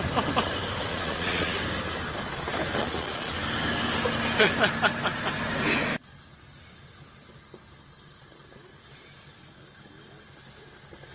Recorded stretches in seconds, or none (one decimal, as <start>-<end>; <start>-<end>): 0.0-0.9; 1.6-2.8; 3.3-11.1